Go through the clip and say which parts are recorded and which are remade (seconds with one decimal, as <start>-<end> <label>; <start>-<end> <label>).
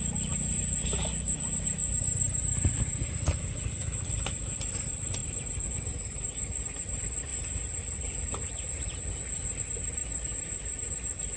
0.0-11.4 recorded